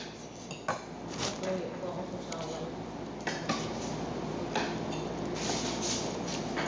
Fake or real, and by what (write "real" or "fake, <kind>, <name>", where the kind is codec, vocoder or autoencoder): real